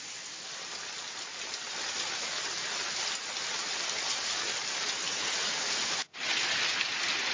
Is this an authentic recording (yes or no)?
yes